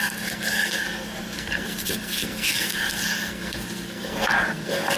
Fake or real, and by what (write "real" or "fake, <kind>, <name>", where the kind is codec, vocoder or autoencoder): fake, codec, SNAC